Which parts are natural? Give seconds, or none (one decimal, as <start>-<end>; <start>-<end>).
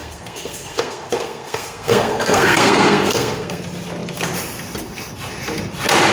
3.6-6.1